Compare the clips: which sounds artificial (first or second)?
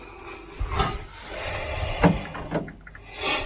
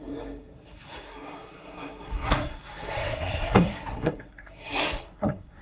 second